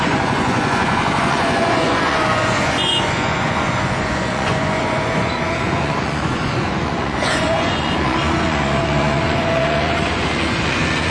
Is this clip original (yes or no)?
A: no